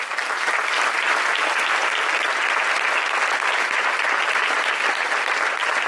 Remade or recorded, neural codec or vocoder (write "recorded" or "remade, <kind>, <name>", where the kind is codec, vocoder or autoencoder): remade, vocoder, BigVGAN v2